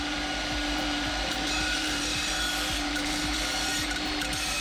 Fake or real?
fake